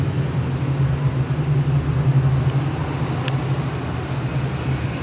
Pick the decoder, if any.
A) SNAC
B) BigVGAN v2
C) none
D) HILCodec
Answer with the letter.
C